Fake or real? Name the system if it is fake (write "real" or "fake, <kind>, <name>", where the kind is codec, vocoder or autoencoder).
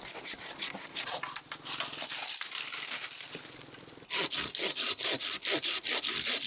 real